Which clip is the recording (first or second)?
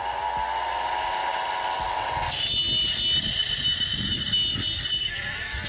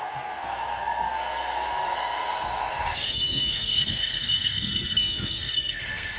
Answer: first